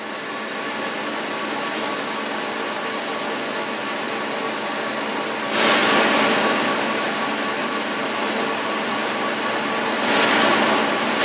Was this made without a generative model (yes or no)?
yes